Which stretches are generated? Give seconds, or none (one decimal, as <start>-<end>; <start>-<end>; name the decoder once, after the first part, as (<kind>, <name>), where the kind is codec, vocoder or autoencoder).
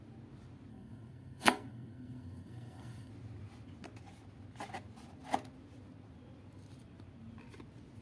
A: 0.7-3.1 (codec, SNAC)